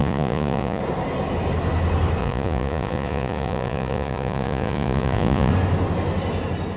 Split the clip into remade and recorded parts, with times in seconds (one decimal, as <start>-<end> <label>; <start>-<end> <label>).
0.0-0.8 remade; 0.8-2.2 recorded; 2.2-5.5 remade; 5.5-6.8 recorded